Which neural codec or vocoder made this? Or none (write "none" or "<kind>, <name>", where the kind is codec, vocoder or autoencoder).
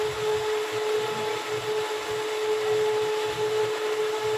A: none